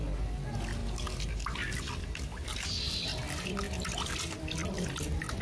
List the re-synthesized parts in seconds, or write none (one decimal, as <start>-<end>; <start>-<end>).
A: none